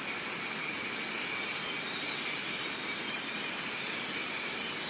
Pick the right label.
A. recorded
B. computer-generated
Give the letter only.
A